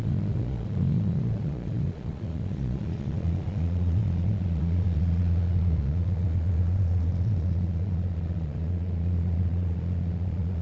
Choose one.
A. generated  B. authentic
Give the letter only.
A